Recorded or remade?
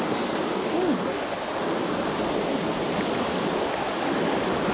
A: recorded